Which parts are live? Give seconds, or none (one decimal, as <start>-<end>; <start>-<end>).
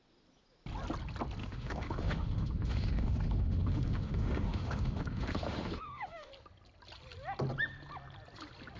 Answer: 0.0-1.4; 6.3-8.8